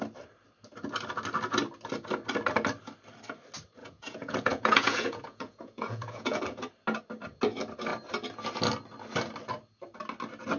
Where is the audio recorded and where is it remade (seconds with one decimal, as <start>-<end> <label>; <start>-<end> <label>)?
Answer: 0.0-3.8 recorded; 3.8-6.4 remade; 6.4-10.6 recorded

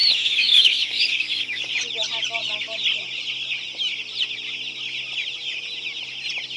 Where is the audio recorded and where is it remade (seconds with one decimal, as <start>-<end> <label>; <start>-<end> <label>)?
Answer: 0.0-1.7 remade; 1.7-6.6 recorded

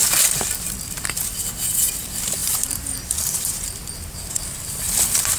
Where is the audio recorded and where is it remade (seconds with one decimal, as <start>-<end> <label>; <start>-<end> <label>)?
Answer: 0.0-2.4 recorded; 2.4-4.3 remade; 4.3-5.4 recorded

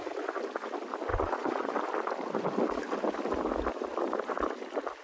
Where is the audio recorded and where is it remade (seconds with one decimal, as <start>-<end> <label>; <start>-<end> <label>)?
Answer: 0.0-1.1 recorded; 1.1-1.7 remade; 1.7-5.0 recorded

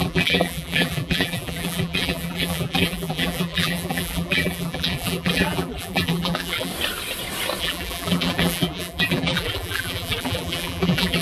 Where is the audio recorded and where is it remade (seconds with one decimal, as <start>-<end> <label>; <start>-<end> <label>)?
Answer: 0.0-6.7 remade; 6.7-7.6 recorded; 7.6-11.2 remade

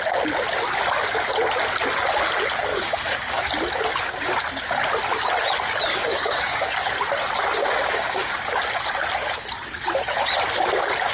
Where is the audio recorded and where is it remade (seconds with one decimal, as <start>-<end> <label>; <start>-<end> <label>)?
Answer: 0.0-2.7 recorded; 2.7-3.4 remade; 3.4-5.9 recorded; 5.9-6.7 remade; 6.7-7.6 recorded; 7.6-8.3 remade; 8.3-11.1 recorded